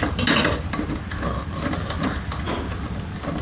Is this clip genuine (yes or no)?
yes